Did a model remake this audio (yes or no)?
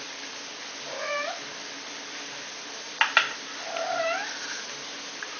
no